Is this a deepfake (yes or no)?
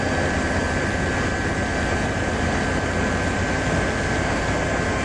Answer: no